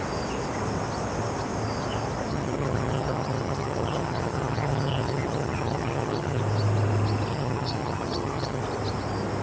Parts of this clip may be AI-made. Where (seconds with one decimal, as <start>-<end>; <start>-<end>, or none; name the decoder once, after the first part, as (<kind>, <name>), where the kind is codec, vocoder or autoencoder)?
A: 2.3-6.4 (vocoder, HiFi-GAN); 7.3-8.6